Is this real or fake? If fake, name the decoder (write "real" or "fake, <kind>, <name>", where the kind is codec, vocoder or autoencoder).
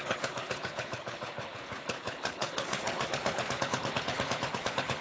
fake, codec, HILCodec